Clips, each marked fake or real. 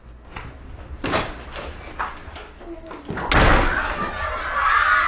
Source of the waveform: real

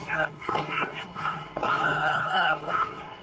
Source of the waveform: fake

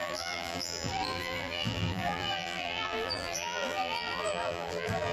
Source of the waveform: fake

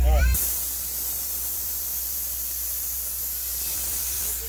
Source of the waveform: fake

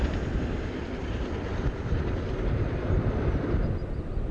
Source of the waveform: real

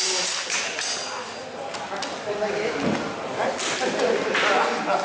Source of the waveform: real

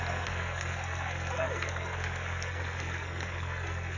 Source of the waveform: fake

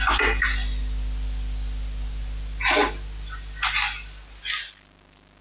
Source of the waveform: real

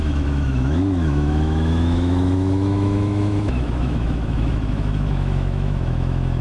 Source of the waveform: fake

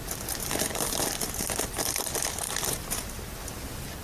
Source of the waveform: real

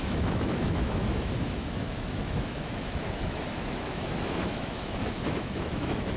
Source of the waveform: fake